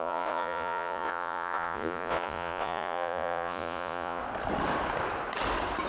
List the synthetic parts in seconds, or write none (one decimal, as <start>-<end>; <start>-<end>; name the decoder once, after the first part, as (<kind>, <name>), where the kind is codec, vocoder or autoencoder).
0.0-4.2 (vocoder, Vocos)